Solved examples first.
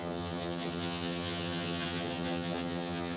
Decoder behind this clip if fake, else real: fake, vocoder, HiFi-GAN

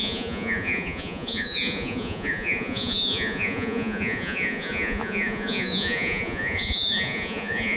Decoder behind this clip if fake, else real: fake, vocoder, Vocos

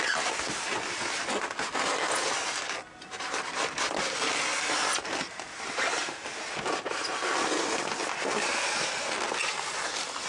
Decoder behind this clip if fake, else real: real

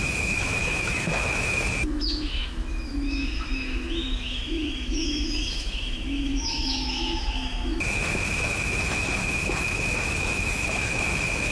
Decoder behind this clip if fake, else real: fake, autoencoder, DAC-VAE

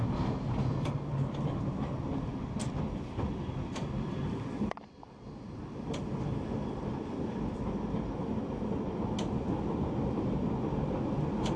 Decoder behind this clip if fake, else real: real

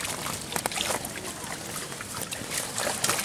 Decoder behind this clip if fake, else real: real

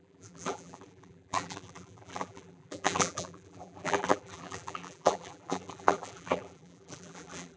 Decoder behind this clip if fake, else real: fake, vocoder, BigVGAN v2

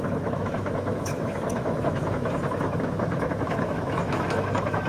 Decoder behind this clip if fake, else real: fake, autoencoder, DAC-VAE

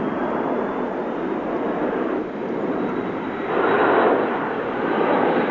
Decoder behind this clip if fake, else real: real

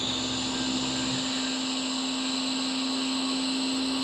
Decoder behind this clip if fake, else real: real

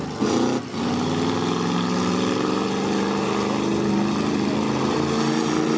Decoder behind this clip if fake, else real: real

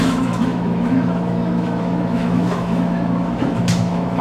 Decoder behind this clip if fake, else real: fake, autoencoder, DAC-VAE